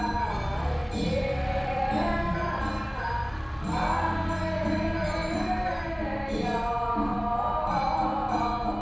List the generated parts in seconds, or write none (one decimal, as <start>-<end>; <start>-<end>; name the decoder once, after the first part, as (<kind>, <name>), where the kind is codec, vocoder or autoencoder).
0.8-1.9 (vocoder, BigVGAN v2); 5.2-6.2; 7.1-7.8